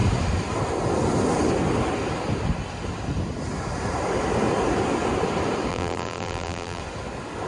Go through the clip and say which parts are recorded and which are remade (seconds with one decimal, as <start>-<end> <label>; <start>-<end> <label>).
0.0-5.7 recorded; 5.7-6.8 remade; 6.8-7.5 recorded